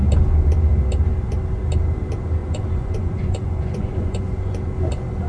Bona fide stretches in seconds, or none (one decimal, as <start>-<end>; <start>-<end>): 0.0-2.4; 4.6-5.3